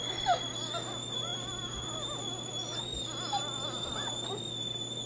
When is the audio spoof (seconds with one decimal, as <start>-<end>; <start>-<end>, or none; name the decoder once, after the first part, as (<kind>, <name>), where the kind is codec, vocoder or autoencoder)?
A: none